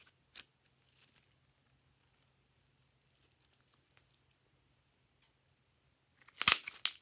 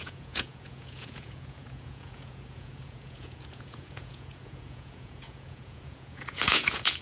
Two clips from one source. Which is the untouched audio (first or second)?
first